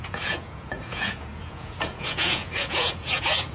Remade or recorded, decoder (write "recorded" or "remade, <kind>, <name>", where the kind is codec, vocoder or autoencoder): remade, vocoder, Vocos